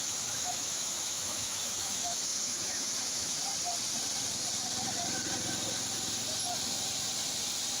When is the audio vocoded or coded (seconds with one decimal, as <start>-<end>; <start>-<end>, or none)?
0.0-3.4